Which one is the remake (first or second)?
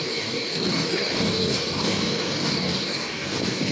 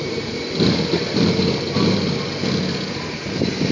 first